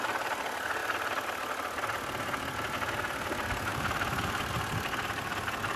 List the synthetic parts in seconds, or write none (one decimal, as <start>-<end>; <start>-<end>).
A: 3.7-4.5